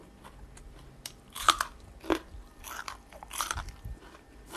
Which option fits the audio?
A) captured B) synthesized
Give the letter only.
B